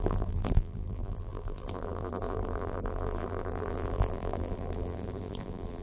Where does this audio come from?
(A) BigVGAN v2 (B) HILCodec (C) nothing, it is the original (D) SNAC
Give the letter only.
A